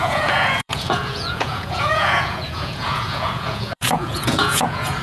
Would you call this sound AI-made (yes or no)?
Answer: yes